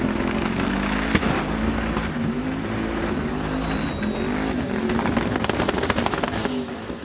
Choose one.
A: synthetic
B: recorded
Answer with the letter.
B